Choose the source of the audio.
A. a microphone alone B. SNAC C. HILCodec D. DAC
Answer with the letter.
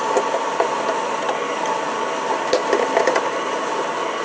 A